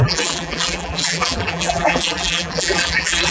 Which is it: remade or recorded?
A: remade